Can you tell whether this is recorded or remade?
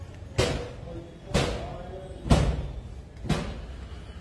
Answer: recorded